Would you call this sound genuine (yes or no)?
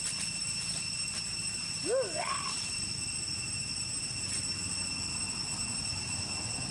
yes